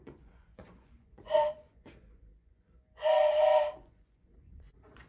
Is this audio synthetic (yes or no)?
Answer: yes